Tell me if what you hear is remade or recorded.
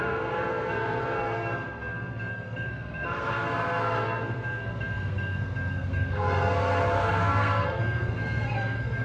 remade